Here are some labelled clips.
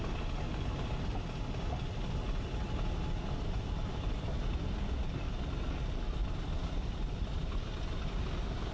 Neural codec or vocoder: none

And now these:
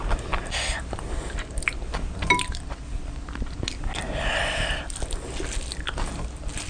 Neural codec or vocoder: none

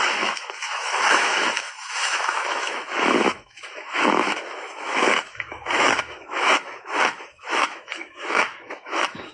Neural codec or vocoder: autoencoder, DAC-VAE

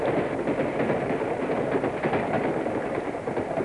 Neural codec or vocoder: none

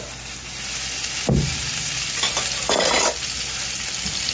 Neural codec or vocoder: none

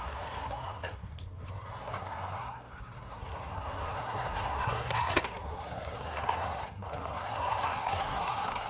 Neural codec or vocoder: codec, SNAC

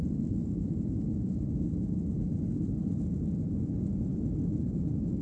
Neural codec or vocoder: vocoder, BigVGAN v2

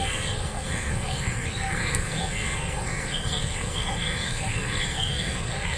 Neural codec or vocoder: codec, SNAC